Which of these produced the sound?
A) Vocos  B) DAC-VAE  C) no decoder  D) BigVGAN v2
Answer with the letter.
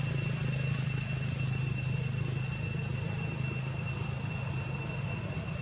C